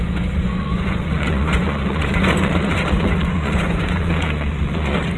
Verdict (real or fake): fake